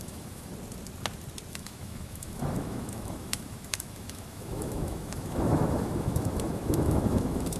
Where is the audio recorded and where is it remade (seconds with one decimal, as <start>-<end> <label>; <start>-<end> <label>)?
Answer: 0.0-0.5 remade; 0.5-1.5 recorded; 1.5-7.6 remade